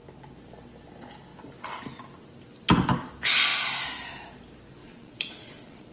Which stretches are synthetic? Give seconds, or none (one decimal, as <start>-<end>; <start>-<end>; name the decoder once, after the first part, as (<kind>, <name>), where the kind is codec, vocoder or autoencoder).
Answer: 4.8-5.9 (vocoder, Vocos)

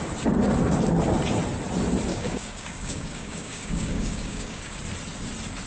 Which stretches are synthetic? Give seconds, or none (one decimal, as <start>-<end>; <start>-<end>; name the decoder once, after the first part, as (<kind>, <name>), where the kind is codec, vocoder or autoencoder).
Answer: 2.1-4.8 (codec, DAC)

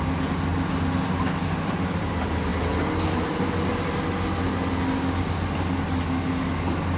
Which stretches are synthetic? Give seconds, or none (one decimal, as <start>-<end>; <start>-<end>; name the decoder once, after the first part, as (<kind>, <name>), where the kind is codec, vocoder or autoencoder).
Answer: none